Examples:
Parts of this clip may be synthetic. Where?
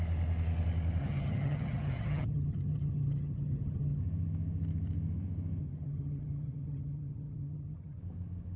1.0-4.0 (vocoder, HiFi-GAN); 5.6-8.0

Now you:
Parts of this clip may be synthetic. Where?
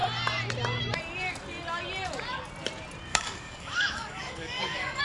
3.1-5.0 (codec, DAC)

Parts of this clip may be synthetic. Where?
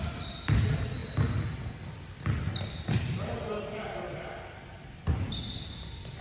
none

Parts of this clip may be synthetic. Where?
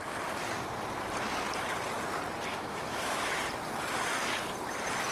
2.5-3.4 (autoencoder, DAC-VAE)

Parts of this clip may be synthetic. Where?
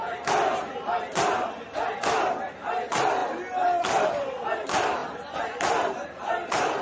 3.2-4.1 (vocoder, BigVGAN v2); 5.0-6.8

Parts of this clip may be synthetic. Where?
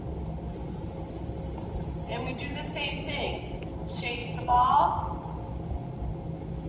none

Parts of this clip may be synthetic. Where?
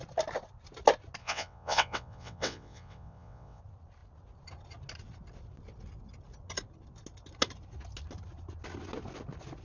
1.2-3.6 (vocoder, WaveNeXt)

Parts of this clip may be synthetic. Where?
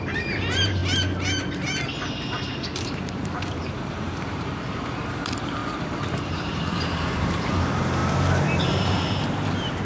0.0-0.8 (vocoder, BigVGAN v2); 2.5-9.8